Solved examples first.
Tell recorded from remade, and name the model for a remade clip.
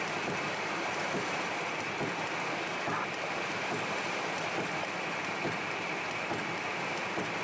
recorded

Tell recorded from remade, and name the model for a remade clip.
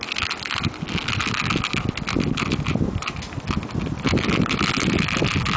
recorded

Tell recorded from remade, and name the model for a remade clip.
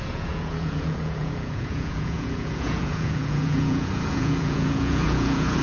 remade, vocoder, Vocos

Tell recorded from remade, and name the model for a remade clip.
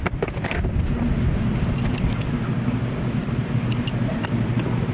recorded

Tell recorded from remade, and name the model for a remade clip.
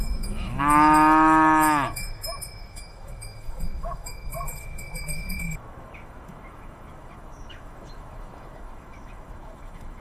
remade, autoencoder, DAC-VAE